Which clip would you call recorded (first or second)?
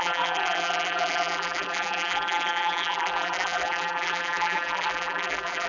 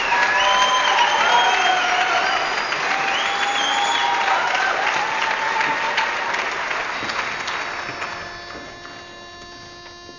second